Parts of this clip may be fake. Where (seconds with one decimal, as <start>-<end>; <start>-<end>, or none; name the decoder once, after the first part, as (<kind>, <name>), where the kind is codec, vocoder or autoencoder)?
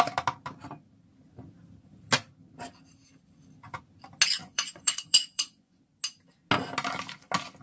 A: 4.4-5.8 (vocoder, Vocos)